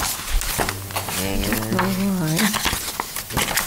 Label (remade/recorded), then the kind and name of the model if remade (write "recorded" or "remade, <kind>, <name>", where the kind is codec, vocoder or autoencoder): recorded